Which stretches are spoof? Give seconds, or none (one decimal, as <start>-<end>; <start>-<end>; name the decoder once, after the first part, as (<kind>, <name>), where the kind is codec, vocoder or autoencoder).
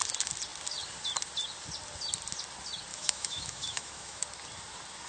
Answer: 2.9-4.2 (autoencoder, DAC-VAE)